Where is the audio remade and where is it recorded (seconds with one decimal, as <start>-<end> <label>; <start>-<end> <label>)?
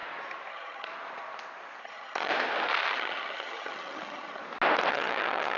0.0-0.5 recorded; 0.5-0.9 remade; 0.9-1.8 recorded; 1.8-2.3 remade; 2.3-2.9 recorded; 2.9-4.4 remade; 4.4-4.9 recorded; 4.9-5.6 remade